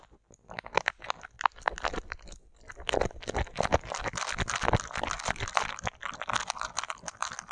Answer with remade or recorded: recorded